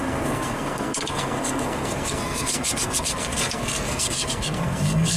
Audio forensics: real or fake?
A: fake